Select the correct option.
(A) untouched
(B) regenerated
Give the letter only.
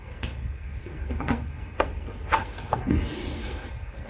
B